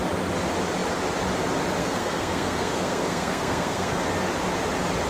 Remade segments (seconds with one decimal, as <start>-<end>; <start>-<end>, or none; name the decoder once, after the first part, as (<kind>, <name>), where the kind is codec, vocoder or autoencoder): 1.8-3.9 (codec, SNAC)